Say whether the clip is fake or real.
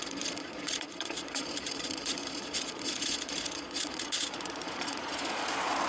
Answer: fake